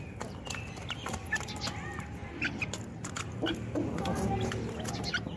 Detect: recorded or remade recorded